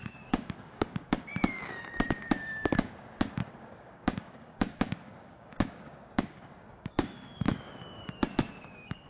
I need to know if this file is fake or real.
fake